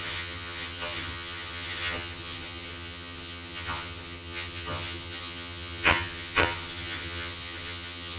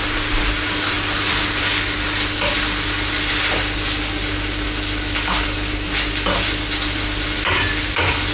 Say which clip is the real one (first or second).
second